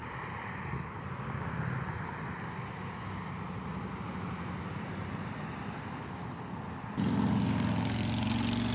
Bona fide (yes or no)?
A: yes